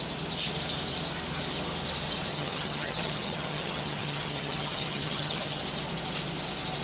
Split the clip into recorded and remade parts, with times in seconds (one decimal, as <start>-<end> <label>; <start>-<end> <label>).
0.0-2.3 recorded; 2.3-5.6 remade; 5.6-6.8 recorded